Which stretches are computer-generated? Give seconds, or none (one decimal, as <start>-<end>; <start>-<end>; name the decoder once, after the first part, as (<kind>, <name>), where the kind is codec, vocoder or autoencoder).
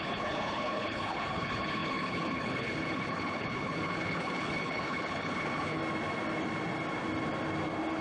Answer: 0.0-5.8 (codec, HILCodec)